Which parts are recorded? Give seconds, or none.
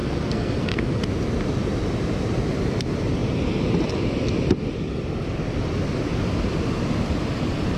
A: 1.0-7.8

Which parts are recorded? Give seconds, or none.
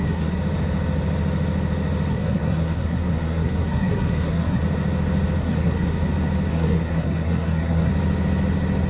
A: 0.4-2.1; 4.6-5.4; 6.0-6.5; 7.9-8.9